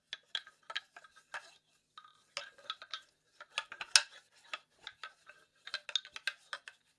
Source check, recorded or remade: recorded